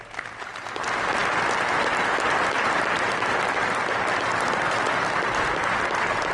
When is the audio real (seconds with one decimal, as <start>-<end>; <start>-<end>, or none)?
0.0-1.2; 2.0-6.3